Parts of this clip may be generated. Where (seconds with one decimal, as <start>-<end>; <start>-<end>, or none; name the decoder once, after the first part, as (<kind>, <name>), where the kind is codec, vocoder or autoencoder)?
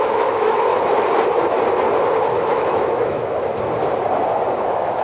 0.0-0.7 (autoencoder, DAC-VAE); 2.3-3.5; 4.6-5.0